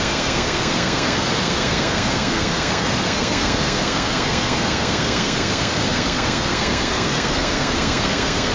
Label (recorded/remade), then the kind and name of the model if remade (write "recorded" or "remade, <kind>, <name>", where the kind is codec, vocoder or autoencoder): remade, codec, SNAC